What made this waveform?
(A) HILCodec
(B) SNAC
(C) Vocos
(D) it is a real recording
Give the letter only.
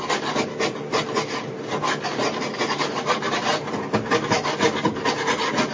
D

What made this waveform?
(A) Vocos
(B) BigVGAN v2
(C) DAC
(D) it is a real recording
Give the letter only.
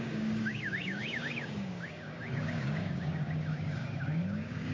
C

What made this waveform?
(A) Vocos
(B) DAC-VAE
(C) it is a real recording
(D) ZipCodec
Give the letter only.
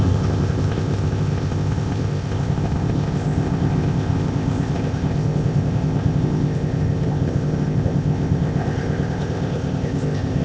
D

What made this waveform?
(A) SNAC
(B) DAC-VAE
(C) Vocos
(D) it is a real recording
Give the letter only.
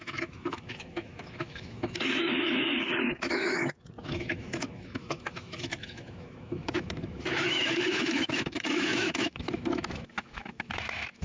B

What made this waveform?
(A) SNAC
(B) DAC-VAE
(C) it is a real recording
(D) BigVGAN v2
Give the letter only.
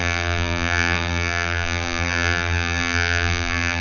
D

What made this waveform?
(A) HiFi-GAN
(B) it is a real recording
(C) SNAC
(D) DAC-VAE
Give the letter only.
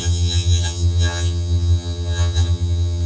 A